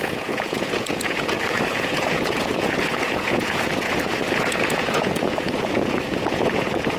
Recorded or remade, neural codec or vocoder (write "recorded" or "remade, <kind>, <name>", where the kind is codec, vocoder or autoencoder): remade, vocoder, Vocos